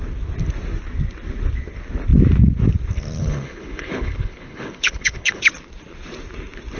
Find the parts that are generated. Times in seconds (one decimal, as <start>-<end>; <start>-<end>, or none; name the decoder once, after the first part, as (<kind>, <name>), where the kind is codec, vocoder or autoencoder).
3.2-5.4 (codec, HILCodec)